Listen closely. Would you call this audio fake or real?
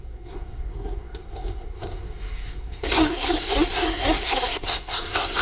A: fake